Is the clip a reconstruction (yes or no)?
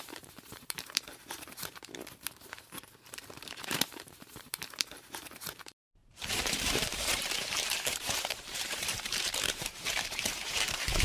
yes